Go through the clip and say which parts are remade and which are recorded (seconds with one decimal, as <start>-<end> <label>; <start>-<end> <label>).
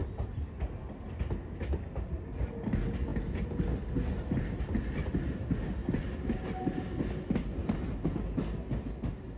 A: 0.0-9.4 recorded